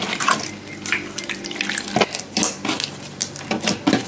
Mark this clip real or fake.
real